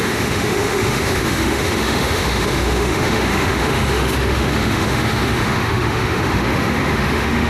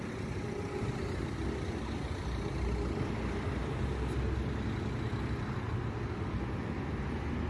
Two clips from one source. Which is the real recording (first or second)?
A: second